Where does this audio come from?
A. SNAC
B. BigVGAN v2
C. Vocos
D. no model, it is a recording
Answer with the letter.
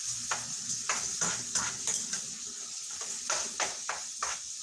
D